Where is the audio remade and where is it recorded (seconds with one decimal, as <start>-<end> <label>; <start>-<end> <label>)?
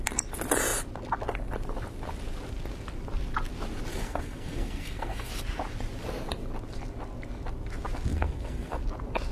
0.0-3.9 recorded; 3.9-5.3 remade; 5.3-8.1 recorded; 8.1-8.8 remade; 8.8-9.3 recorded